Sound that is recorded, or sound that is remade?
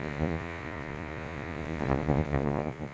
remade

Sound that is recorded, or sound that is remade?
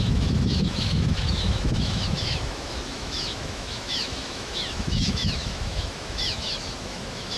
remade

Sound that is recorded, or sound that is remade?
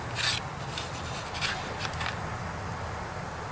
recorded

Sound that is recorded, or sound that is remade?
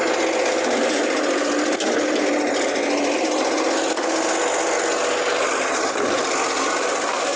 recorded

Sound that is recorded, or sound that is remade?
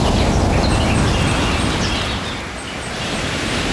recorded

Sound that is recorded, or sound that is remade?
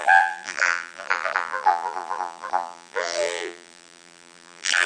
remade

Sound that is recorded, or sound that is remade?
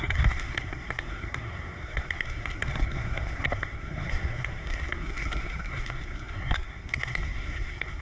remade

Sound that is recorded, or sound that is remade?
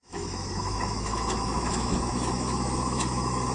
remade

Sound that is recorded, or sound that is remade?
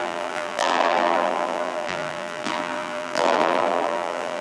remade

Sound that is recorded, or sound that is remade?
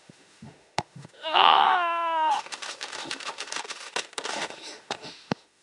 remade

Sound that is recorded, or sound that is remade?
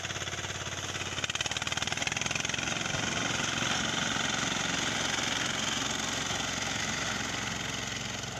recorded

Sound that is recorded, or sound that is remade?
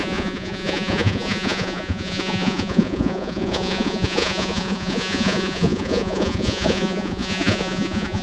remade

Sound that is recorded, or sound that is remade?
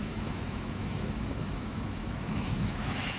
remade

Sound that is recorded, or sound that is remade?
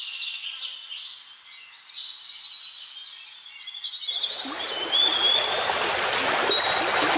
recorded